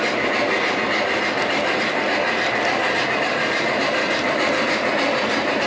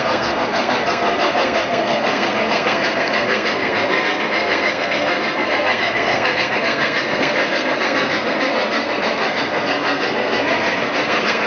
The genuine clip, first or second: first